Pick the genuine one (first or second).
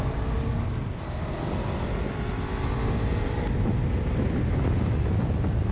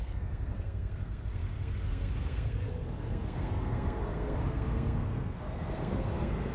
first